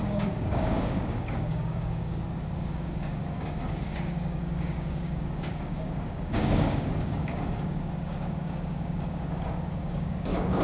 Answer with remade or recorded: remade